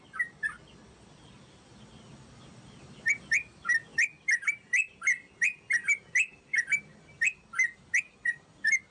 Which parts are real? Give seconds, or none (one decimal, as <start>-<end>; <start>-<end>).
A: 0.0-8.9